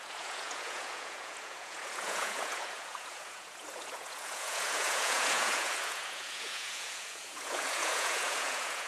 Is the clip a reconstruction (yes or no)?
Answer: yes